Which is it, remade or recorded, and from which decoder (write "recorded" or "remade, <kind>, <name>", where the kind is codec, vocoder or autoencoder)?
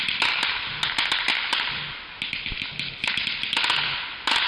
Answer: recorded